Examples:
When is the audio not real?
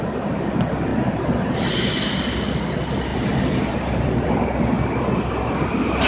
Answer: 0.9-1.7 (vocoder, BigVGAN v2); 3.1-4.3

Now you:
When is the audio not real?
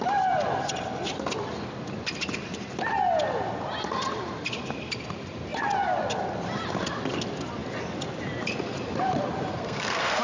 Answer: 9.5-10.2 (codec, SNAC)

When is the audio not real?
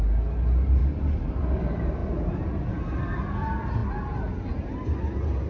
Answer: none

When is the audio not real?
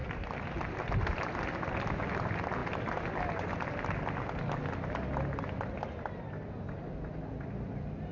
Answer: none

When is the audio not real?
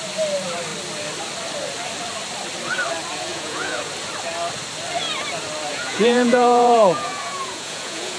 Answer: 3.3-3.9 (vocoder, Vocos); 5.7-8.2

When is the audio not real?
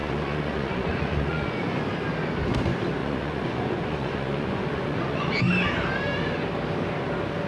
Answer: 0.0-1.8 (vocoder, Vocos); 3.0-5.4